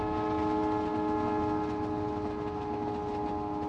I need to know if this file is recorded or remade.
recorded